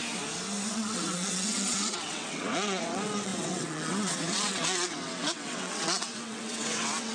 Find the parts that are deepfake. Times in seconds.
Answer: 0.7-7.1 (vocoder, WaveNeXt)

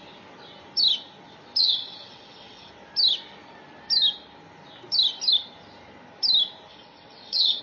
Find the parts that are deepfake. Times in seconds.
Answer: 1.6-2.7 (vocoder, WaveNeXt); 6.7-7.6